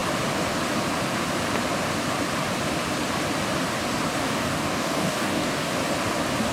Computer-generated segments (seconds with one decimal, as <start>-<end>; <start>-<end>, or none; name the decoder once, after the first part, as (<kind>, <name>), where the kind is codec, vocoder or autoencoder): 4.2-5.7 (codec, DAC)